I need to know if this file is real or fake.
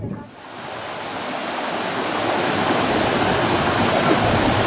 real